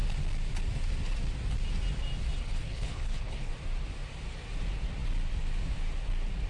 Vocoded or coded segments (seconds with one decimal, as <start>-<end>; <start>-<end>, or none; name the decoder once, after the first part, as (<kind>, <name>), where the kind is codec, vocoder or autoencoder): 2.4-3.5 (codec, HILCodec)